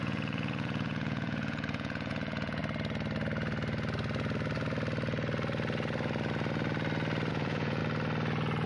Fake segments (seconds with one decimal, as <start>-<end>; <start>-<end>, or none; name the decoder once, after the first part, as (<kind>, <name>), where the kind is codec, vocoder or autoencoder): 0.0-2.6 (vocoder, Vocos); 7.3-7.8